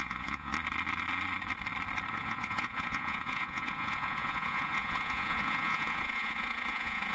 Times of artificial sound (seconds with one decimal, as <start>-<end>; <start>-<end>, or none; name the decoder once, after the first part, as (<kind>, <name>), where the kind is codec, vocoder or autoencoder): 0.0-0.5 (vocoder, Vocos); 2.1-7.1